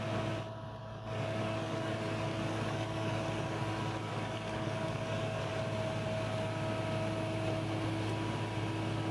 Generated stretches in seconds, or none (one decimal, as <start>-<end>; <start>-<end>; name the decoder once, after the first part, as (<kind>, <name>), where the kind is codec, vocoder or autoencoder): 0.8-5.5 (codec, DAC)